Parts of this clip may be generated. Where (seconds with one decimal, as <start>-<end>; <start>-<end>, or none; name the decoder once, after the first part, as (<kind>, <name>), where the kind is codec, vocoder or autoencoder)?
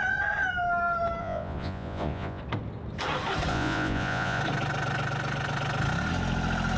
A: 1.2-2.4 (vocoder, Vocos); 3.5-4.4